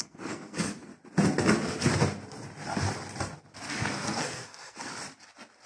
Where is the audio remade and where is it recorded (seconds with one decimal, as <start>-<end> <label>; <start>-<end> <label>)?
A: 0.0-0.9 remade; 0.9-3.7 recorded; 3.7-4.9 remade; 4.9-5.7 recorded